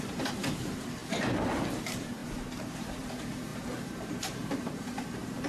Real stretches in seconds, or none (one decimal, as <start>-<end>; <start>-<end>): 1.0-1.8